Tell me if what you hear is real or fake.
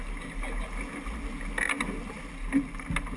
real